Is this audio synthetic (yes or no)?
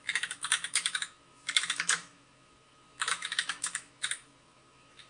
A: yes